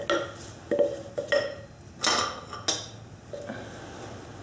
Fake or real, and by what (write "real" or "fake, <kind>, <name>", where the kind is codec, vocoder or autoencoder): real